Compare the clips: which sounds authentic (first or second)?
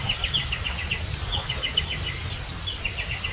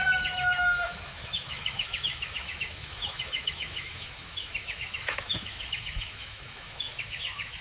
first